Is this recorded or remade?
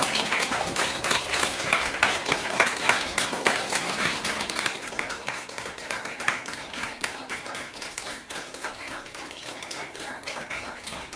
remade